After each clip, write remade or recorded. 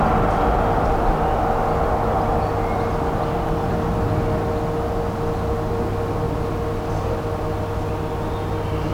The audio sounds recorded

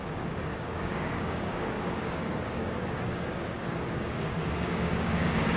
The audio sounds remade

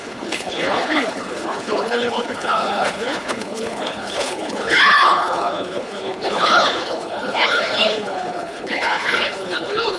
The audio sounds remade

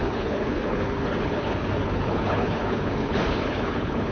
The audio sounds remade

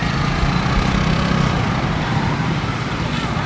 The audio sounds recorded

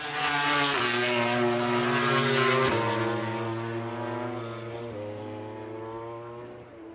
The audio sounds recorded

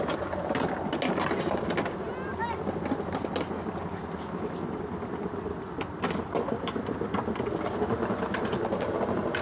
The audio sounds recorded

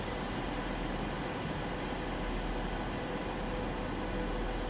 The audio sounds recorded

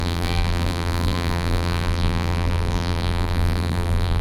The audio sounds remade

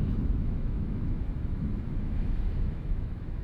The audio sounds remade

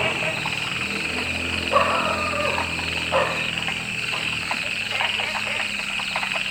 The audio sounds recorded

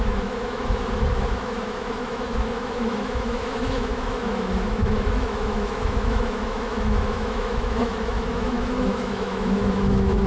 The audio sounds remade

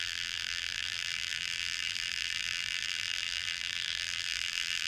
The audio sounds remade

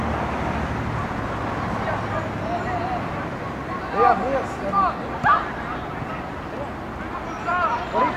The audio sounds recorded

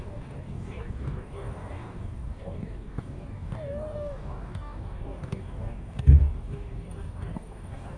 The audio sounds remade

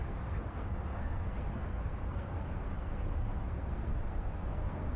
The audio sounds remade